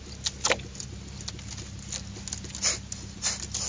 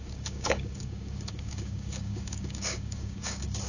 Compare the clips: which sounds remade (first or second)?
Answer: second